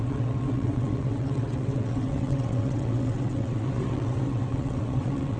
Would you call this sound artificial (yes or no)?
yes